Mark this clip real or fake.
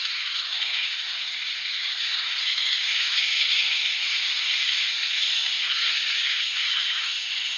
fake